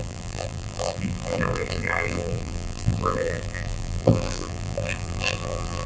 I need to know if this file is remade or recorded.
remade